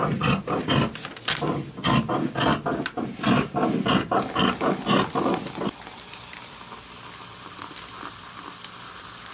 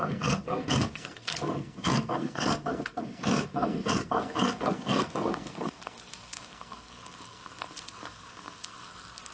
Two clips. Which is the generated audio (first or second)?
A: second